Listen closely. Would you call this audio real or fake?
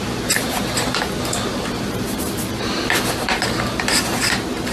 fake